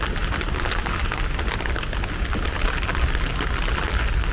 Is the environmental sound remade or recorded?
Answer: recorded